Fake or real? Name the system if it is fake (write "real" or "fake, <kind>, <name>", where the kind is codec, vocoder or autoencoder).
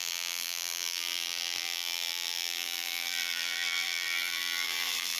fake, vocoder, BigVGAN v2